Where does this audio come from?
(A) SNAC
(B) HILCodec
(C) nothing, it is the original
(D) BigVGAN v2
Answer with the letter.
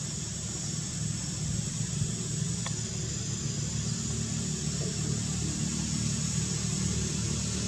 C